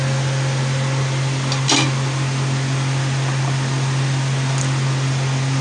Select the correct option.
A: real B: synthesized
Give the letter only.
A